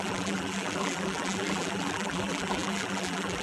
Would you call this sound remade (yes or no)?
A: yes